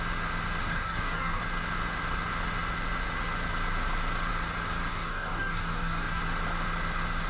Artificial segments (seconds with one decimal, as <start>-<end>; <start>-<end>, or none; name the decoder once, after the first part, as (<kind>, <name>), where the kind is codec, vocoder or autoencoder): 0.6-1.4 (codec, DAC); 4.9-6.2